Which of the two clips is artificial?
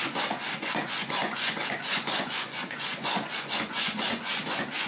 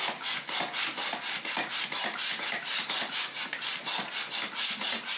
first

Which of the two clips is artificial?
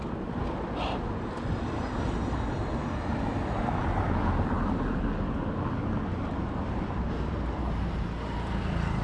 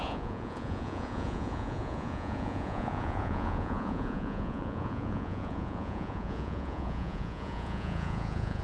second